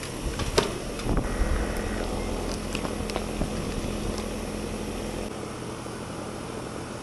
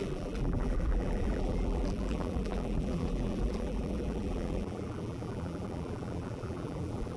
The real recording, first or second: first